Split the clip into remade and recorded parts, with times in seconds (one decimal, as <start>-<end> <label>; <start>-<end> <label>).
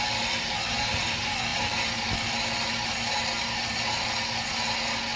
0.0-5.2 recorded